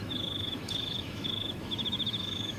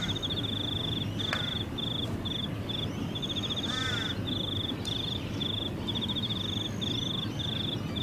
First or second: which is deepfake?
first